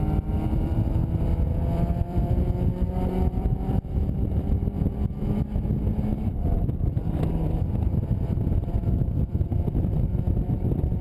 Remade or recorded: remade